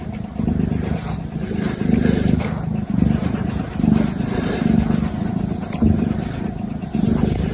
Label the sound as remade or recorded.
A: recorded